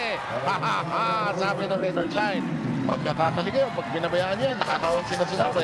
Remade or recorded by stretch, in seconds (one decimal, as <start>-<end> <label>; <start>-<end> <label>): 0.0-1.6 recorded; 1.6-2.2 remade; 2.2-2.9 recorded; 2.9-3.5 remade; 3.5-4.5 recorded; 4.5-5.6 remade